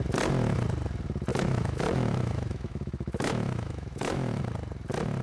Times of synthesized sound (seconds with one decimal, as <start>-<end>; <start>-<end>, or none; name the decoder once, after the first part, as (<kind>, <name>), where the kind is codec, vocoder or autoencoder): 1.3-4.4 (autoencoder, DAC-VAE)